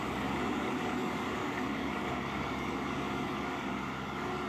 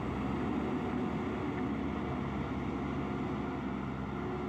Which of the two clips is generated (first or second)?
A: first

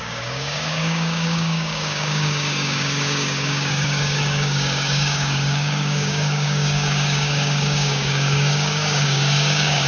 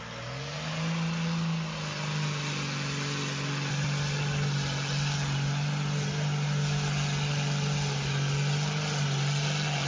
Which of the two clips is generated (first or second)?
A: first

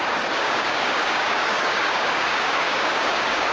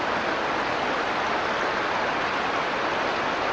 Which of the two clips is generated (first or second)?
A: first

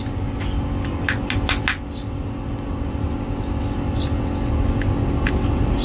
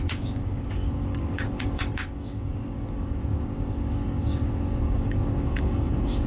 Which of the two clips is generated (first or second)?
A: second